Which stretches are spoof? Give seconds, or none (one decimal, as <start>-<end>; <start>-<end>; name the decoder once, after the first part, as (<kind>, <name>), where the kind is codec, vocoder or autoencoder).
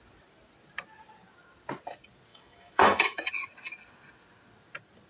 2.3-3.3 (autoencoder, DAC-VAE)